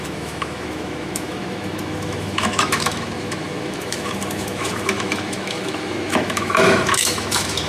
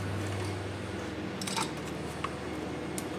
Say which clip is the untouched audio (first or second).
second